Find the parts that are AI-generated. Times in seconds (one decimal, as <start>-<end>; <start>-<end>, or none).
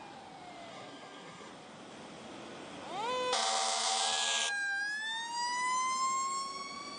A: 0.7-1.5